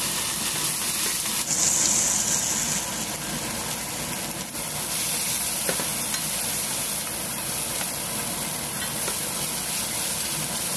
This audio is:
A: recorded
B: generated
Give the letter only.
A